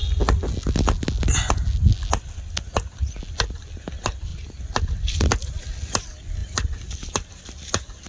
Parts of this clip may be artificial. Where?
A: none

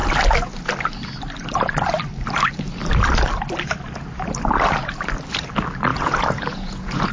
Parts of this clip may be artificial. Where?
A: 5.9-7.1 (vocoder, Vocos)

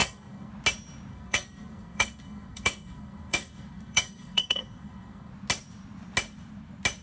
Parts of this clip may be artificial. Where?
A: 0.0-0.5 (codec, SNAC); 1.1-5.3

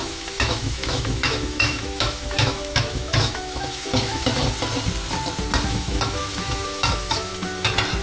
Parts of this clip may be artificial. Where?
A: 0.0-4.3 (autoencoder, DAC-VAE); 5.7-7.3

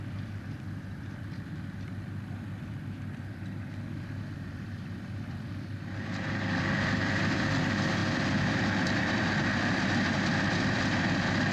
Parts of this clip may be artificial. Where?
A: 0.0-8.0 (vocoder, BigVGAN v2); 8.7-11.5

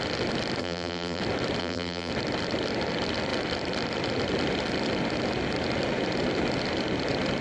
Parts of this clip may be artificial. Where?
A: 0.6-1.2 (vocoder, BigVGAN v2); 1.6-2.1